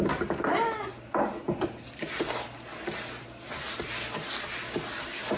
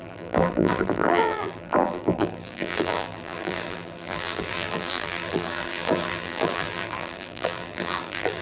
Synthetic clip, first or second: second